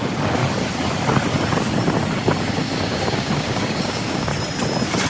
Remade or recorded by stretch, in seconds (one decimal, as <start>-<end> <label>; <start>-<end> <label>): 0.0-0.4 remade; 0.4-2.4 recorded; 2.4-4.3 remade; 4.3-5.1 recorded